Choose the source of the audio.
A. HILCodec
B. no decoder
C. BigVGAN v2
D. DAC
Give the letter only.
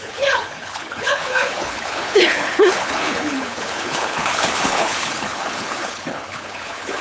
A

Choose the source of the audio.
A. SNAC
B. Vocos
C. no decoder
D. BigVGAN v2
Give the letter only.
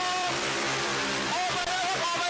D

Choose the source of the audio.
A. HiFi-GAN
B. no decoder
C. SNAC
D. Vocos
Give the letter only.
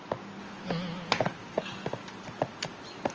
B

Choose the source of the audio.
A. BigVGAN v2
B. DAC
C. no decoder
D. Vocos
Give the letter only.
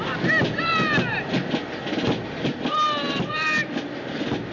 C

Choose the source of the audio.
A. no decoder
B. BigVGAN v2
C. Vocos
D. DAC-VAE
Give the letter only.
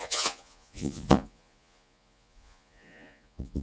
C